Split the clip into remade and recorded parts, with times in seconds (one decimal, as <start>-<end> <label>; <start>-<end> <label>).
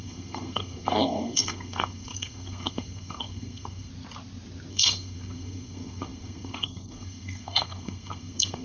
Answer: 0.0-3.9 remade; 3.9-4.7 recorded; 4.7-8.6 remade